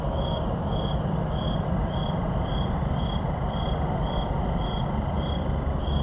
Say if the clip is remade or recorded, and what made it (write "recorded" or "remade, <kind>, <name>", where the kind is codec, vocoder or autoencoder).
recorded